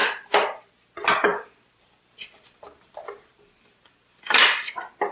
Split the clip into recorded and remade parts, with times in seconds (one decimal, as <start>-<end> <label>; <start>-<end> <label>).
0.0-1.3 recorded; 1.3-4.4 remade; 4.4-5.1 recorded